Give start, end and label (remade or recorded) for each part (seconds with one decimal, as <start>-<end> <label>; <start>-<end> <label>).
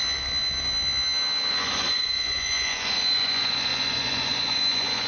0.0-1.5 recorded; 1.5-5.1 remade